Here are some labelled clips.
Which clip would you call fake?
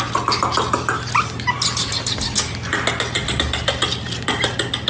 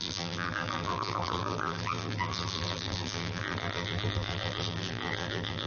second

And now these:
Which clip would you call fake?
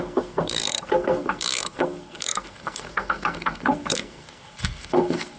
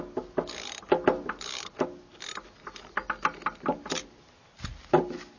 first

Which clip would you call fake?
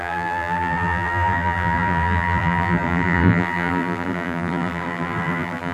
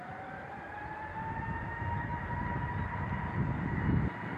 first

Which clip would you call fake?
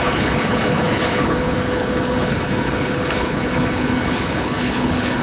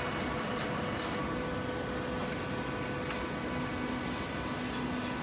first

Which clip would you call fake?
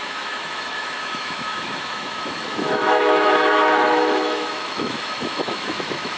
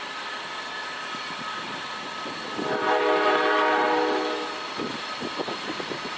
first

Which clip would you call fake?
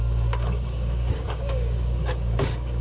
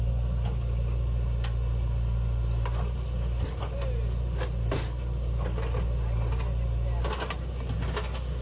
first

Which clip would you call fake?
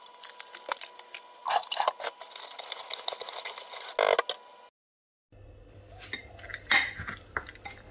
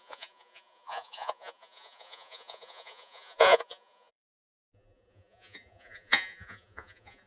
second